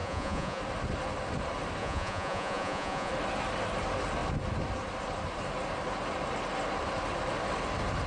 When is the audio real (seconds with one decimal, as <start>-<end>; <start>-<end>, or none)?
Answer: 0.6-1.8; 3.1-8.1